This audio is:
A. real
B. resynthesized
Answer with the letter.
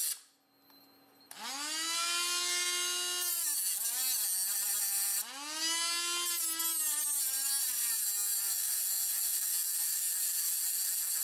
A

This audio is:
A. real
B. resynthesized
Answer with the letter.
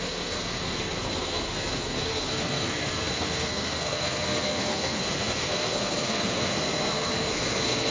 B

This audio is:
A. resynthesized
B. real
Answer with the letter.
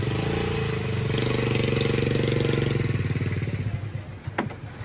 B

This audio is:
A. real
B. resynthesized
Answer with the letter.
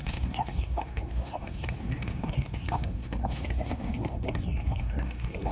B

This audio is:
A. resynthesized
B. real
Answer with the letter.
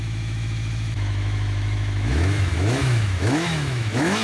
A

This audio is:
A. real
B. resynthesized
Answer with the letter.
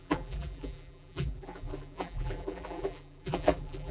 B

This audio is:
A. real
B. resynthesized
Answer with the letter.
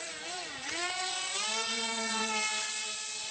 B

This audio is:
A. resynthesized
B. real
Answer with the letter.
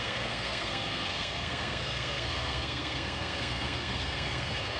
A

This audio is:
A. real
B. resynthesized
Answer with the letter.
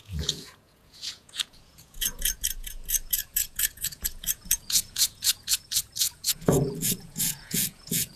B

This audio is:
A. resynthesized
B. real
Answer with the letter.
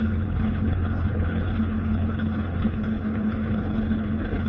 A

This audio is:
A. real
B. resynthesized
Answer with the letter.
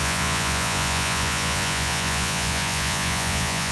B